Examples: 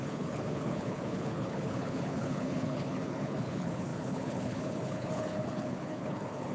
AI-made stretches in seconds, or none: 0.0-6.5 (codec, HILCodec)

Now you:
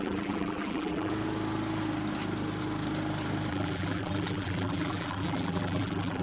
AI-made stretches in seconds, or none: 0.0-1.1 (vocoder, BigVGAN v2); 3.5-6.2

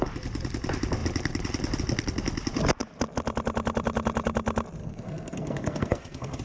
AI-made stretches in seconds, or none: 4.8-6.4 (codec, SNAC)

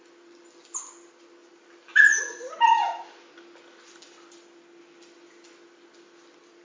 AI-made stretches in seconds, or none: none

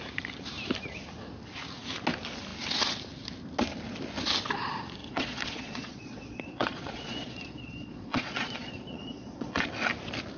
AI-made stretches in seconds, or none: 5.0-9.7 (vocoder, Vocos)